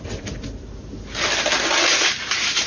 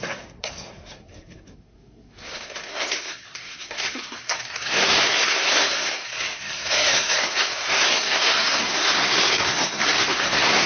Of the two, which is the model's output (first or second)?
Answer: second